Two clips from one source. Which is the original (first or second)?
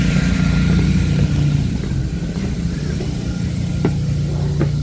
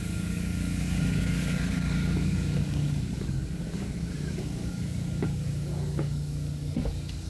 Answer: first